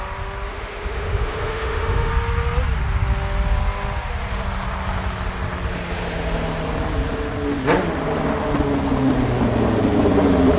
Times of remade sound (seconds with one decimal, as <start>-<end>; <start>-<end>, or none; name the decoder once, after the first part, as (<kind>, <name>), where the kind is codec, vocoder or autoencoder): 0.5-2.1 (autoencoder, DAC-VAE)